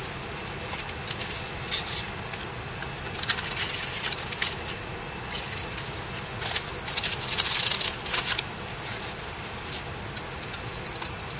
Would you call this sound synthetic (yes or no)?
no